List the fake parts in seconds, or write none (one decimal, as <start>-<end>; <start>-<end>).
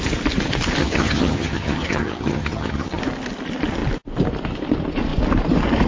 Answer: 0.8-3.0